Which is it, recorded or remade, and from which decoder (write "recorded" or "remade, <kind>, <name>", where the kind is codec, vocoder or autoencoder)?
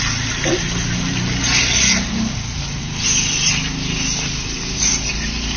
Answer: recorded